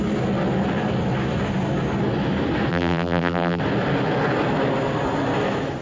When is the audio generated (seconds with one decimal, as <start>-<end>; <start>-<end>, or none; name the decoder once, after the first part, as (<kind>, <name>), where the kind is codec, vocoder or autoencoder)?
2.7-3.6 (vocoder, BigVGAN v2)